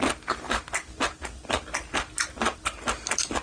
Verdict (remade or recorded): recorded